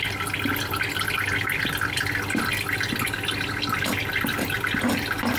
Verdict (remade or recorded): recorded